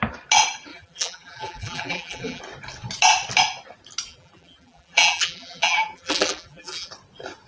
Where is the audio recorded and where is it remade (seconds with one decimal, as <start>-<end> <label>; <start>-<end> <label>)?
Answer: 0.0-0.7 recorded; 0.7-2.4 remade; 2.4-4.1 recorded; 4.1-6.9 remade; 6.9-7.5 recorded